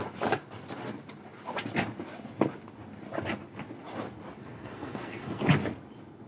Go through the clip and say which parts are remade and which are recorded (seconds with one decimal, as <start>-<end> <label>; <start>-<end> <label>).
0.0-4.4 recorded; 4.4-5.4 remade; 5.4-6.3 recorded